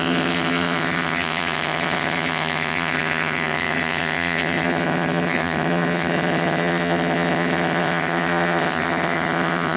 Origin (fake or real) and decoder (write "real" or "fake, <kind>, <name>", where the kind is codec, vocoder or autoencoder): fake, vocoder, HiFi-GAN